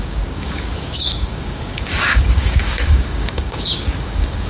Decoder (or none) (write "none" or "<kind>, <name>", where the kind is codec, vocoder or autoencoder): codec, DAC